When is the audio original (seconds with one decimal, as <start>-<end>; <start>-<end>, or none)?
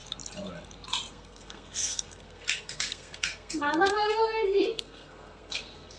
0.0-1.1